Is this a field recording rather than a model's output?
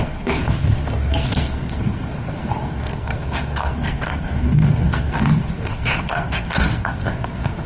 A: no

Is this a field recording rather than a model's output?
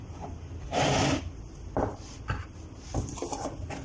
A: yes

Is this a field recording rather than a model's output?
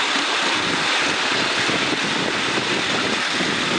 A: yes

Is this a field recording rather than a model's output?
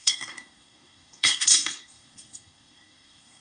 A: no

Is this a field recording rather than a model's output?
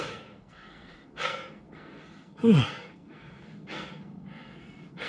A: no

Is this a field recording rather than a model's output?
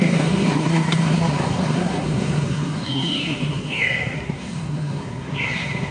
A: no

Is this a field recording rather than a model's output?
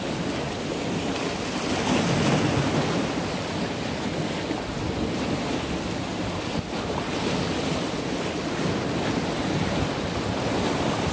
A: yes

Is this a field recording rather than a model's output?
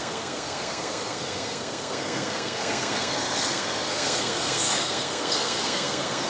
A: no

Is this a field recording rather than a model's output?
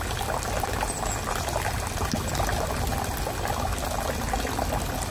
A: yes